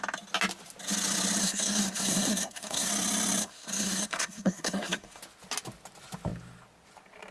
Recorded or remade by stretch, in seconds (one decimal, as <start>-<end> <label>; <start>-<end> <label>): 0.0-1.4 recorded; 1.4-2.9 remade; 2.9-3.4 recorded; 3.4-5.2 remade; 5.2-7.3 recorded